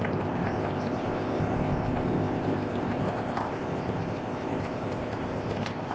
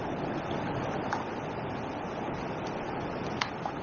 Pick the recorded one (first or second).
second